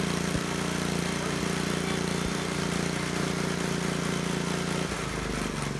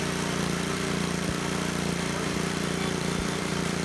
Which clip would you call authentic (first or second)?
first